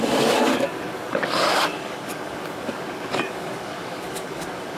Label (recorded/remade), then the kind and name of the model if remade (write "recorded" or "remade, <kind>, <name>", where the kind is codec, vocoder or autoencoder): remade, codec, DAC